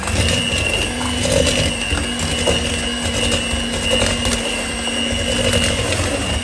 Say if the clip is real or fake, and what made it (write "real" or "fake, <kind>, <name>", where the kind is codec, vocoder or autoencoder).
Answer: real